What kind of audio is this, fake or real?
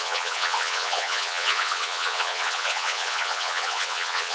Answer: fake